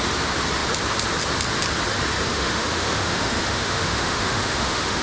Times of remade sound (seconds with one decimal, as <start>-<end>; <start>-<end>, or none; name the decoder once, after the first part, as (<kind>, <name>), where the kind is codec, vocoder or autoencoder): 2.3-5.0 (autoencoder, DAC-VAE)